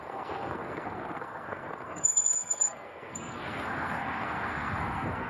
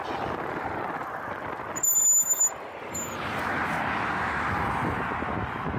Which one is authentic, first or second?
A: second